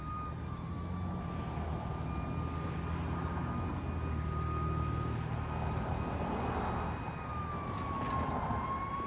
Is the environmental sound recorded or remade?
recorded